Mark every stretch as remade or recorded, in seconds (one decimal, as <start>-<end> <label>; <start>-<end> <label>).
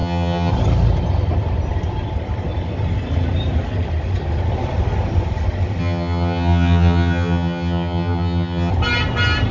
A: 0.0-0.5 remade; 0.5-5.8 recorded; 5.8-8.7 remade; 8.7-9.5 recorded